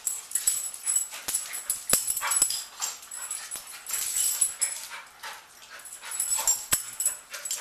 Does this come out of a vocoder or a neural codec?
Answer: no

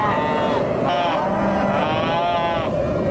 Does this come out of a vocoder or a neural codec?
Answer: no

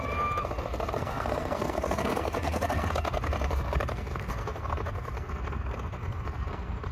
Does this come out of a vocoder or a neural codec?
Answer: yes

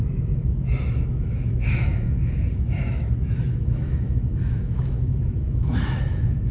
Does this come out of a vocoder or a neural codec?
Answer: yes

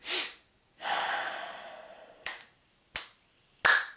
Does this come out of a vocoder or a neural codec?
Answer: no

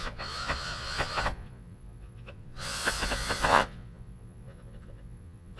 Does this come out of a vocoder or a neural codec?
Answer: yes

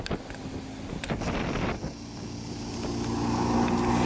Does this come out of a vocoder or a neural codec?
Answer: no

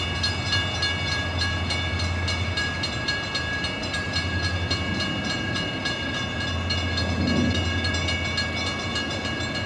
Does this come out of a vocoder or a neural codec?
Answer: no